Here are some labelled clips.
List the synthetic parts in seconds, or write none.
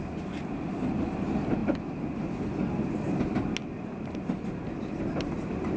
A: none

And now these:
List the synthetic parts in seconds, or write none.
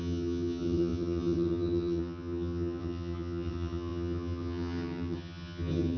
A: 0.0-6.0 (vocoder, HiFi-GAN)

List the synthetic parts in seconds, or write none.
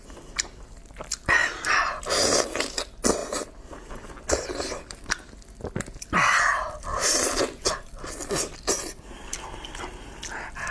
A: 1.4-2.0 (vocoder, BigVGAN v2); 3.2-3.9; 6.9-8.1